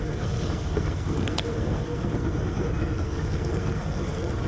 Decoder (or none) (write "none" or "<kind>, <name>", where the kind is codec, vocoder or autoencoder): codec, SNAC